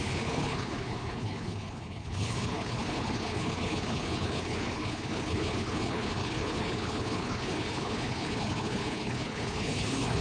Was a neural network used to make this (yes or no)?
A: yes